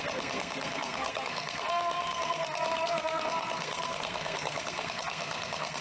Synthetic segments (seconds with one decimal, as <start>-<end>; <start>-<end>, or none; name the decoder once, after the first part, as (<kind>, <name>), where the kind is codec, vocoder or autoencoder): 0.0-5.8 (codec, SNAC)